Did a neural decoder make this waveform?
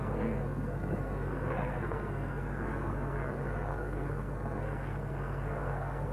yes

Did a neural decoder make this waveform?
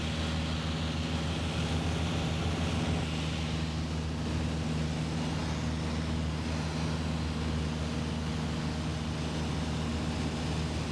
no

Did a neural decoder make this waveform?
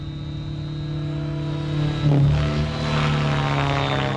no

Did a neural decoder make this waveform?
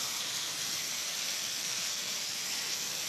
yes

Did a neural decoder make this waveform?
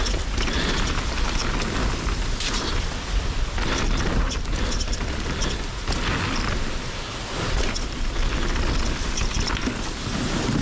no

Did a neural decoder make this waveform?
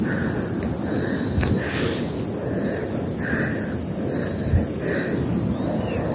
no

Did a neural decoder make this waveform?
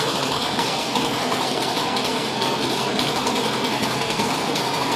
yes